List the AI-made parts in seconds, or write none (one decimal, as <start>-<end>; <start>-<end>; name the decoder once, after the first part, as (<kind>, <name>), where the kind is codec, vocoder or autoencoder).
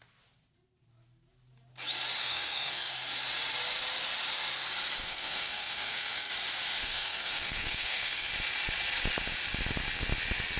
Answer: 2.2-2.9 (codec, SNAC); 5.1-6.3; 6.8-8.3